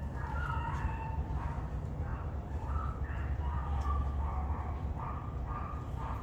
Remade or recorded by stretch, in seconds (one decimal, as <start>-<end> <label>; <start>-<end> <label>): 0.0-2.1 recorded; 2.1-2.9 remade; 2.9-6.2 recorded